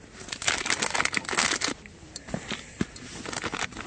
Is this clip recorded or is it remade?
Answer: recorded